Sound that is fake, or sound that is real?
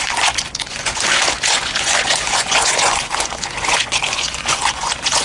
fake